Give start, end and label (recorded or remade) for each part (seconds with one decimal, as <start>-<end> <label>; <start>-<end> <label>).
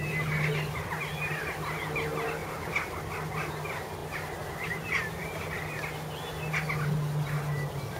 0.0-2.4 recorded; 2.4-3.0 remade; 3.0-8.0 recorded